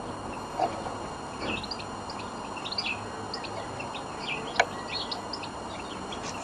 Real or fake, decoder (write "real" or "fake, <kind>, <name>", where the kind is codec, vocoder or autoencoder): real